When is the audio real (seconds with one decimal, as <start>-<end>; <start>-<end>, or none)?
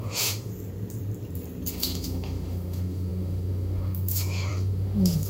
0.5-1.7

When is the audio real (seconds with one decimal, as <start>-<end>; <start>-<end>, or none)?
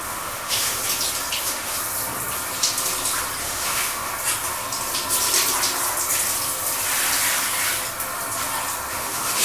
0.8-1.4; 1.8-3.4; 4.1-8.9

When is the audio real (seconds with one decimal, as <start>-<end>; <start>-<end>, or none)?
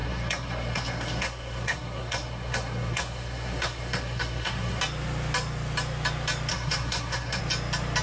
4.8-6.5; 7.4-8.0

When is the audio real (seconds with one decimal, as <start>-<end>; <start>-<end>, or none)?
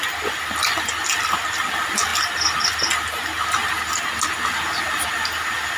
0.0-5.8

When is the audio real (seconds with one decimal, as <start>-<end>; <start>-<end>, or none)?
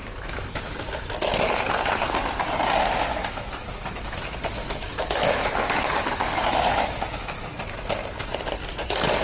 0.6-3.1; 5.8-6.4; 7.5-9.2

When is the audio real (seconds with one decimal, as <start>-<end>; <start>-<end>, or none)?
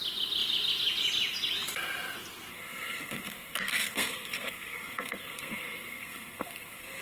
0.0-2.5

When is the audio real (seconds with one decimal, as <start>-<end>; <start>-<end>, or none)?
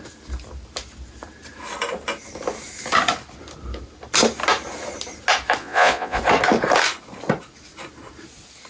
0.0-5.6; 6.2-8.7